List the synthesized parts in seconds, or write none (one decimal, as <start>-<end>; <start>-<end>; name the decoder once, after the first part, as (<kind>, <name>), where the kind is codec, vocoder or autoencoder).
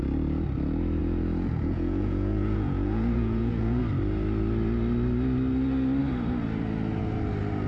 1.0-3.8 (vocoder, Vocos)